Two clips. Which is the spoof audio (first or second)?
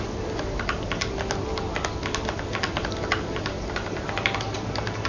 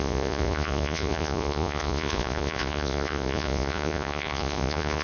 second